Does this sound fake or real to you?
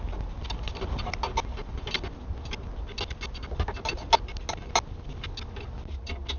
real